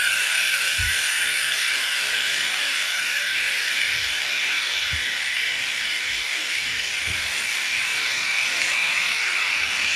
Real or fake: fake